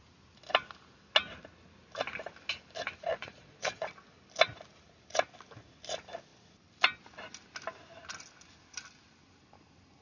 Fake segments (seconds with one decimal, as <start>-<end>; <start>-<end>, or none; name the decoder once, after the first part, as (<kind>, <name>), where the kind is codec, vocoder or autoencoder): 3.1-3.9 (vocoder, Vocos)